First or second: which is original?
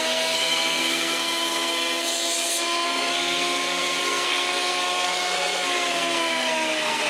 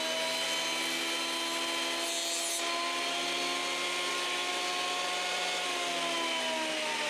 second